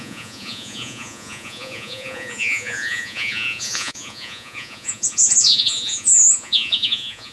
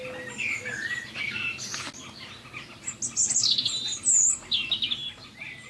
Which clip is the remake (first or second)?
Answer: first